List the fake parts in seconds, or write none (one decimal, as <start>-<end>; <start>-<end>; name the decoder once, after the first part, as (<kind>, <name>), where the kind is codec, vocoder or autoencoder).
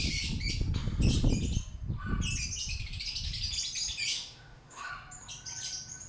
4.1-4.9 (autoencoder, DAC-VAE)